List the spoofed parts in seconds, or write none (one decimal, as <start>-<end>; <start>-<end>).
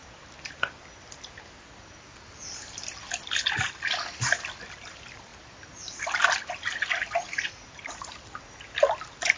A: none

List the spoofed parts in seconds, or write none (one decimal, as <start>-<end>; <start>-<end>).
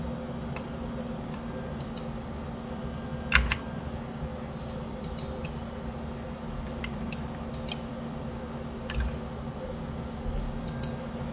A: none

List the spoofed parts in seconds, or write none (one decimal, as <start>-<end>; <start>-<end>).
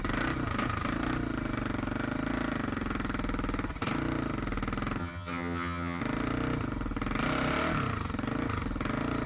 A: 5.0-6.0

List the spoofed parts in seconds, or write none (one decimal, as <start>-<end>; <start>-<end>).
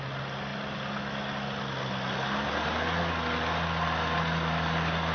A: none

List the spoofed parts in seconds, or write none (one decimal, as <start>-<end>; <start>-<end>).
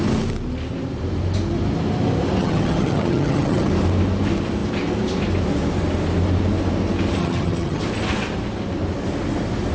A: 2.4-3.7; 7.2-7.8